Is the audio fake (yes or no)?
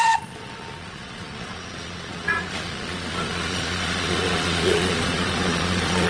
yes